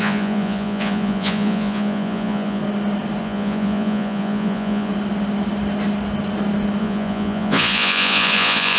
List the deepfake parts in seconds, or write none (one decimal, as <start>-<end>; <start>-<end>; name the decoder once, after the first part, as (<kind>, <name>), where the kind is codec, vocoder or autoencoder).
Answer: 0.0-2.6 (vocoder, Vocos); 3.2-4.9; 6.8-8.8